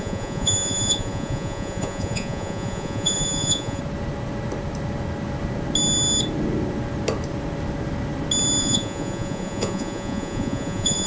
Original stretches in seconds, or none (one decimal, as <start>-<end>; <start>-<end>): 3.8-8.6